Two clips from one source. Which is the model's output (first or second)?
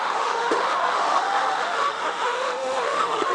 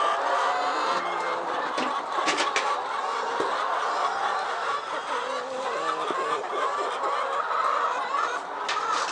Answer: first